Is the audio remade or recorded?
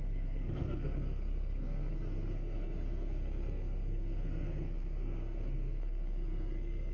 remade